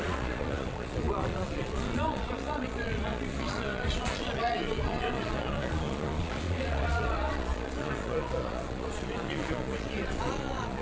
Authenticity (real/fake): fake